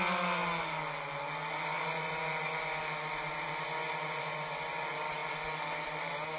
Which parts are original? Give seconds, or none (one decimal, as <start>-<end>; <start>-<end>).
0.0-6.4